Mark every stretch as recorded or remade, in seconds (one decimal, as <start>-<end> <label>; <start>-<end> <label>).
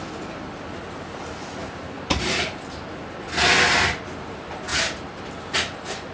0.0-6.1 recorded